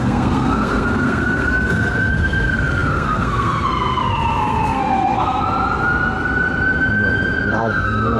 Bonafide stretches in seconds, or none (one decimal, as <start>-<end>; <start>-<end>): 5.4-7.5